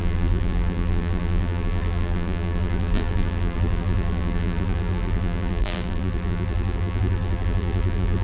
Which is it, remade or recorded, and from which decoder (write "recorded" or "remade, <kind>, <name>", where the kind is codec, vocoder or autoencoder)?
remade, vocoder, BigVGAN v2